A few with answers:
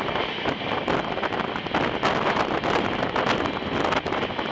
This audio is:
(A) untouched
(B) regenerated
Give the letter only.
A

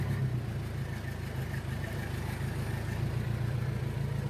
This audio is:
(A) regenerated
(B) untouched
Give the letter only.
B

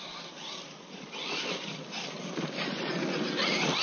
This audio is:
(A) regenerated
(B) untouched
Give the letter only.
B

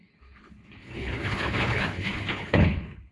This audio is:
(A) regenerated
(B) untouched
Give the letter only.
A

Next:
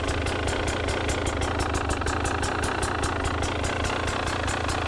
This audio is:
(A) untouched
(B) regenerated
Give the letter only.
A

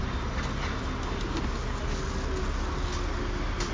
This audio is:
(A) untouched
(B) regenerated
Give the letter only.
A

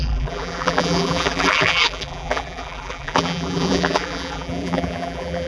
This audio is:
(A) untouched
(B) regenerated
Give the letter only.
B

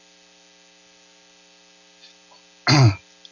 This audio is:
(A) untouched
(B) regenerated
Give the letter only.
A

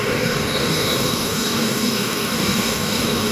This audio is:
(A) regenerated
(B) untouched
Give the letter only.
A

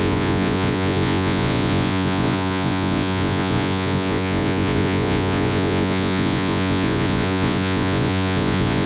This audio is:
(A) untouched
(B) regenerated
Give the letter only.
B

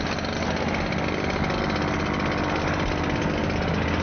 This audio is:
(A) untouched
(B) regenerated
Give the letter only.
A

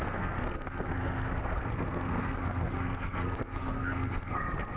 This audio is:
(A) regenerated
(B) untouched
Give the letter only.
A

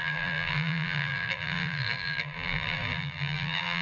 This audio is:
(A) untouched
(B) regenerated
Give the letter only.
B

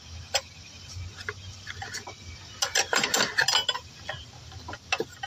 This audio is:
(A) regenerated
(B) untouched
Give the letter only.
B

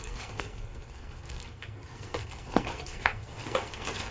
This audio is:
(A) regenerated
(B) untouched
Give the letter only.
A